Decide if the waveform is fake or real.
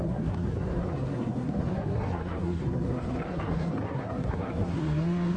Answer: fake